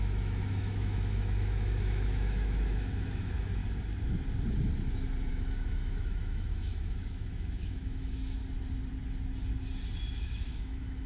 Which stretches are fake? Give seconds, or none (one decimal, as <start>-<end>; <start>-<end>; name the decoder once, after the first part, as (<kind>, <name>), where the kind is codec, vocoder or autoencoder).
0.0-3.6 (autoencoder, DAC-VAE); 5.3-8.4; 10.2-11.1